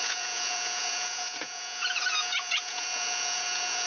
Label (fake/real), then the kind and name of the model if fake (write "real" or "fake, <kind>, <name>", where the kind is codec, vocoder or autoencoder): fake, vocoder, Vocos